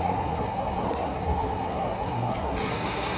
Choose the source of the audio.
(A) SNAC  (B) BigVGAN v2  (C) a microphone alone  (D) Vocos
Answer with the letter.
A